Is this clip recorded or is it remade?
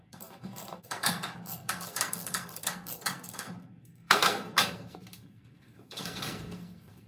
remade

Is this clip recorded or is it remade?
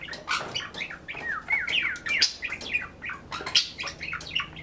recorded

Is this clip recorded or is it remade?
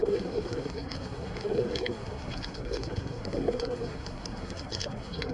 remade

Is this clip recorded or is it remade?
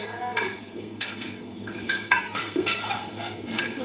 remade